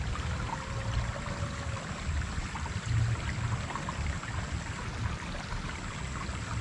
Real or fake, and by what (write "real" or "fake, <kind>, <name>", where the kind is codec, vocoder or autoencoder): real